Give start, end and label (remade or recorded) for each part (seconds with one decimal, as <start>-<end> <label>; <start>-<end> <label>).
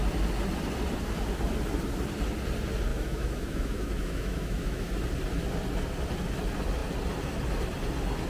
0.0-2.9 recorded; 2.9-4.9 remade; 4.9-8.3 recorded